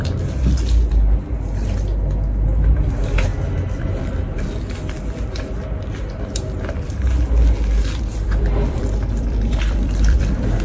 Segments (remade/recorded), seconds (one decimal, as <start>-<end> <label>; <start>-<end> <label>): 0.0-8.1 recorded; 8.1-10.2 remade; 10.2-10.6 recorded